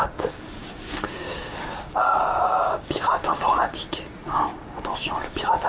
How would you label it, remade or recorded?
remade